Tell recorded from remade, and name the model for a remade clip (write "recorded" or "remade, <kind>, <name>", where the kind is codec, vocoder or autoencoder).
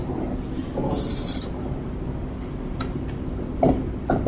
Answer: recorded